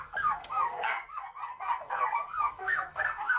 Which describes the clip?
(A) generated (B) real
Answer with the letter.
A